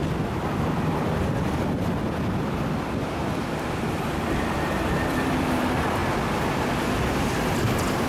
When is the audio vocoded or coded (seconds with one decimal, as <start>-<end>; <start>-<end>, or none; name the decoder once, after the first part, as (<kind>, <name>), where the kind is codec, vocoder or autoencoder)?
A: 0.7-6.0 (vocoder, BigVGAN v2); 6.7-8.1